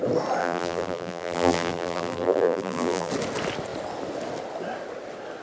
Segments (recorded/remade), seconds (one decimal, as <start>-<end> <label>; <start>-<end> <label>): 0.0-0.4 recorded; 0.4-3.1 remade; 3.1-5.4 recorded